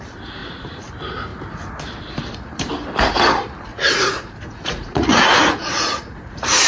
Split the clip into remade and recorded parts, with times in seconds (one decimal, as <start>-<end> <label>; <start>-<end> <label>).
0.0-0.4 recorded; 0.4-0.9 remade; 0.9-3.7 recorded; 3.7-6.7 remade